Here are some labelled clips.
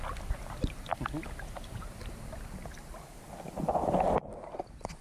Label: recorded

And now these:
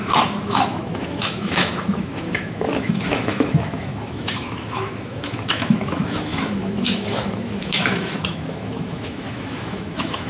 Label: remade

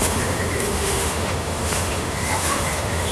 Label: remade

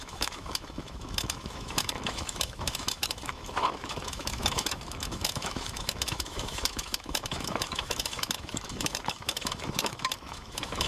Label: remade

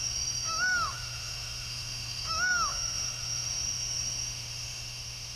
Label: remade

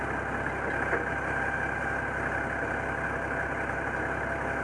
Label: recorded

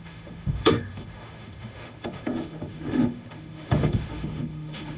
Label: remade